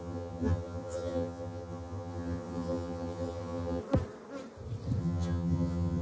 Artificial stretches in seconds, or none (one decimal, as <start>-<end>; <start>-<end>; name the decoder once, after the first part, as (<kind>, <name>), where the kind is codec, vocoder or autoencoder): 0.0-3.8 (vocoder, HiFi-GAN); 5.0-6.0